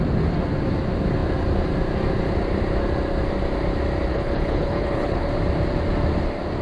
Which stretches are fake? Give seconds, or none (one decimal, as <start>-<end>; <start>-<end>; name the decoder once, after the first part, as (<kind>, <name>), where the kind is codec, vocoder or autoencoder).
4.1-5.3 (codec, HILCodec)